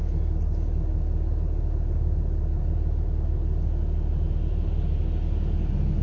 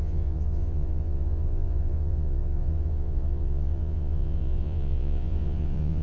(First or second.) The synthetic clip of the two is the second